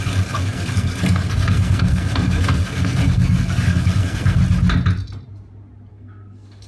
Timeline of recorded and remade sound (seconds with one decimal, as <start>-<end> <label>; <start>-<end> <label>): 0.0-4.4 remade; 4.4-5.9 recorded; 5.9-6.7 remade